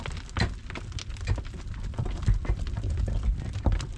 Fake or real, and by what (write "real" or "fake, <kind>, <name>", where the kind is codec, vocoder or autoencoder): real